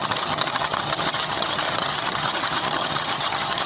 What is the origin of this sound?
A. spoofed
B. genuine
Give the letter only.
A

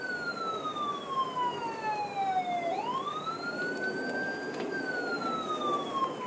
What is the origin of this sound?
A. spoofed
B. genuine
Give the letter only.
B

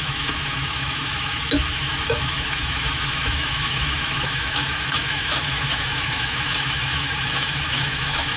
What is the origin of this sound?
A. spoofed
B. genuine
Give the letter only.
A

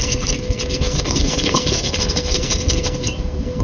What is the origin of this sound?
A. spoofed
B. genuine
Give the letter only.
A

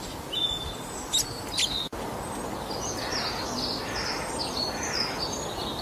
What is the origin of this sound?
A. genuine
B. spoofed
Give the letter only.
A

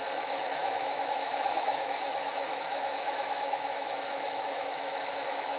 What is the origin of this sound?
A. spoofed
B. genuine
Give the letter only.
A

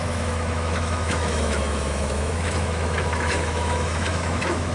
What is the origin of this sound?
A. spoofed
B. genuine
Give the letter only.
A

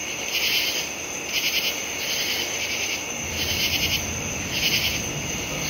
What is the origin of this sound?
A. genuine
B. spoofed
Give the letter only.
A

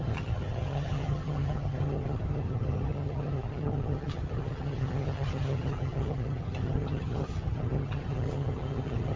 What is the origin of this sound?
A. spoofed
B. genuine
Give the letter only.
A